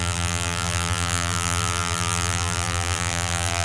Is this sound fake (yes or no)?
yes